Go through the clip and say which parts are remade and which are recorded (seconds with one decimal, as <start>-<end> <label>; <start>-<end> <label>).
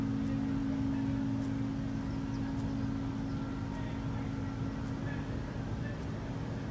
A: 0.0-6.7 recorded